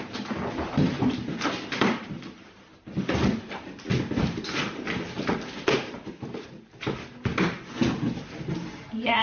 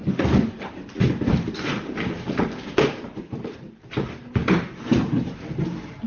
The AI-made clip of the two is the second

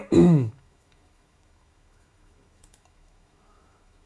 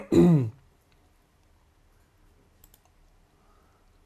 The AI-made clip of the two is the first